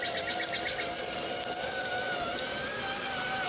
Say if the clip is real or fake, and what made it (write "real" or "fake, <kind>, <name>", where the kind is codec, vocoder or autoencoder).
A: real